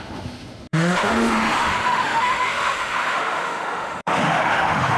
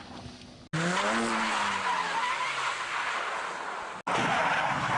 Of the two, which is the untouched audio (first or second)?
second